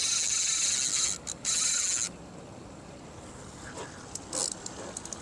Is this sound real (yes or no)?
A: yes